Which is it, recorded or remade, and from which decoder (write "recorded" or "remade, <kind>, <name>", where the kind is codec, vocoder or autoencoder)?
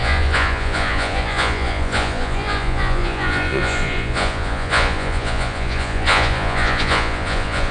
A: remade, vocoder, Vocos